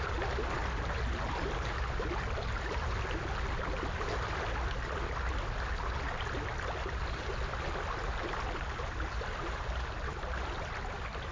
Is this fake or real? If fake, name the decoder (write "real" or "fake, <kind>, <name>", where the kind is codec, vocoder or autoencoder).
real